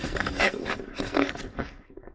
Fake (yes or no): yes